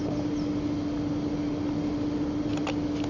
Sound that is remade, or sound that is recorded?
recorded